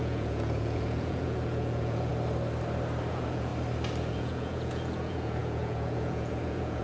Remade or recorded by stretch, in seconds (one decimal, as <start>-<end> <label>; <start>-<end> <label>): 0.0-2.1 remade; 2.1-3.1 recorded; 3.1-3.5 remade; 3.5-4.1 recorded; 4.1-6.8 remade

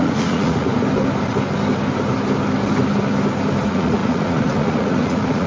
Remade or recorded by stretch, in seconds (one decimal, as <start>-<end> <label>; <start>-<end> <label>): 0.0-0.7 remade; 0.7-3.6 recorded; 3.6-5.5 remade